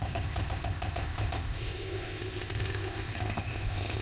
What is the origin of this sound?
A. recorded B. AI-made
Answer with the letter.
B